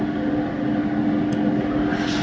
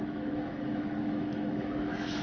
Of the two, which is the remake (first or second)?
second